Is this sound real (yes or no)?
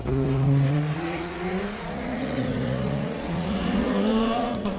no